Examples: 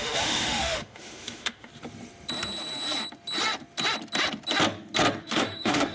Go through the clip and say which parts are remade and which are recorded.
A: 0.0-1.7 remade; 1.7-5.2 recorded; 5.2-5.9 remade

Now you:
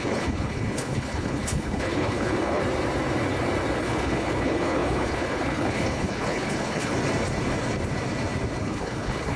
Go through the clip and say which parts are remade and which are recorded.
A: 0.0-2.6 remade; 2.6-3.8 recorded; 3.8-6.9 remade; 6.9-8.6 recorded; 8.6-9.4 remade

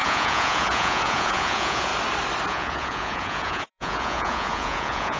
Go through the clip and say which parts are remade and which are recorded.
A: 0.0-1.9 remade; 1.9-2.5 recorded; 2.5-5.2 remade

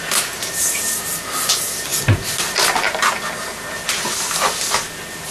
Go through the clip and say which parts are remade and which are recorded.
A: 0.0-5.3 recorded